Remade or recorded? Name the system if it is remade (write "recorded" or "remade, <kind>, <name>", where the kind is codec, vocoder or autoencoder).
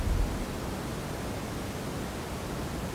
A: recorded